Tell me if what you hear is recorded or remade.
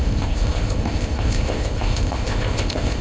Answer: remade